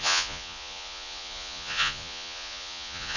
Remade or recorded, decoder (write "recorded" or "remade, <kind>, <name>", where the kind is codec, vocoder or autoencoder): remade, vocoder, Vocos